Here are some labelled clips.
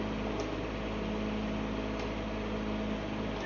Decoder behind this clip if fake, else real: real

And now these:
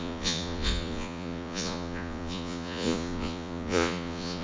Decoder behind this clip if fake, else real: fake, vocoder, Vocos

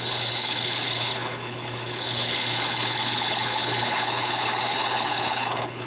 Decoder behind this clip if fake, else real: fake, codec, HILCodec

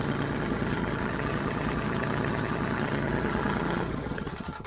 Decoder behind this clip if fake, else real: fake, vocoder, HiFi-GAN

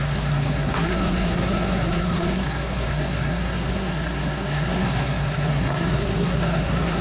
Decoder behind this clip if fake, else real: fake, codec, SNAC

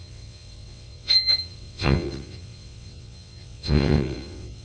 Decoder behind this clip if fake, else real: fake, vocoder, WaveNeXt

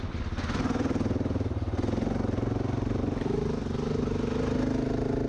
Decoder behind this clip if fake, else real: real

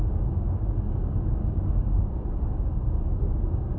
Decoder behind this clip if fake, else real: fake, codec, DAC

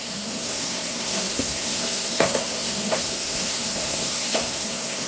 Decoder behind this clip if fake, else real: fake, codec, SNAC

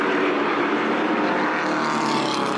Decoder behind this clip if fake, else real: real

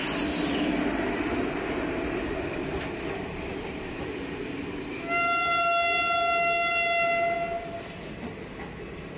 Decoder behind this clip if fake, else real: real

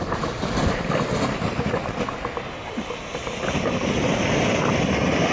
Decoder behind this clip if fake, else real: real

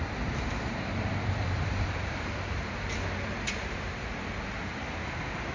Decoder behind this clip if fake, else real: fake, vocoder, BigVGAN v2